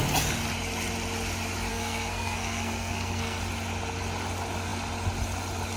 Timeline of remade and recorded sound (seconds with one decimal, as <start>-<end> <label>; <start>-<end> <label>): 0.0-1.7 recorded; 1.7-3.4 remade; 3.4-5.8 recorded